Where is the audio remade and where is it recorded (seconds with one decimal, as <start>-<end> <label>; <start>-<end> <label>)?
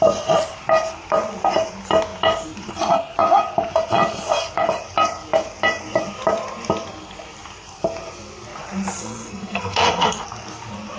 0.0-9.0 recorded; 9.0-10.2 remade; 10.2-11.0 recorded